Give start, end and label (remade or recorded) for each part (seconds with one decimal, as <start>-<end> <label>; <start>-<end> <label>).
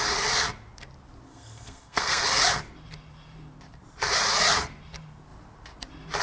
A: 0.0-1.3 recorded; 1.3-2.2 remade; 2.2-6.2 recorded